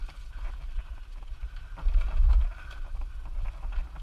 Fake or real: real